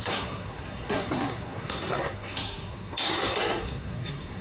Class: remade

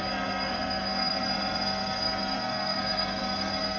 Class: remade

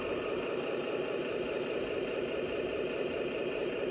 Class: remade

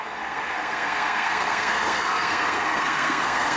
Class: remade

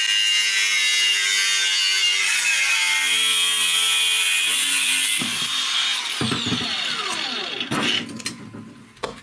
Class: recorded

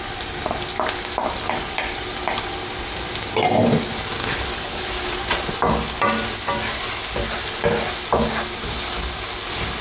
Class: recorded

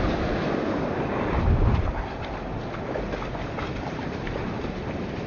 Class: recorded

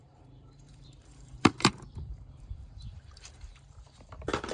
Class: remade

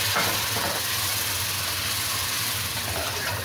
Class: remade